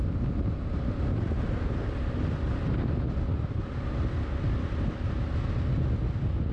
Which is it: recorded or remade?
recorded